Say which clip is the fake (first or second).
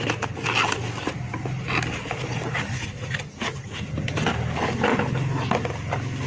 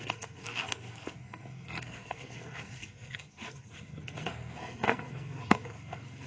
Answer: second